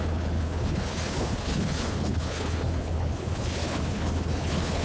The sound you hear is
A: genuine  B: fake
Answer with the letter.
B